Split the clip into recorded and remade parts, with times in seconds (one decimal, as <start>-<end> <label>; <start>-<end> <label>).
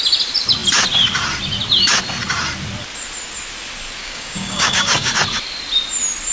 0.0-4.0 recorded; 4.0-5.1 remade; 5.1-6.3 recorded